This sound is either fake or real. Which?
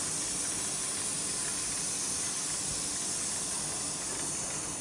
real